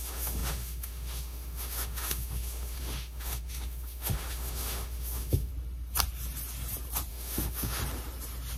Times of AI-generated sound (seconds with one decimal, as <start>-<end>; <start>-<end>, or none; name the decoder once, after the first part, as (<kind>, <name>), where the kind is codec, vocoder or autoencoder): 0.0-5.5 (autoencoder, DAC-VAE); 7.1-7.8